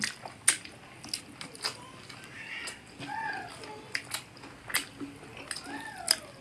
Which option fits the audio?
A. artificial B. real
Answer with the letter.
B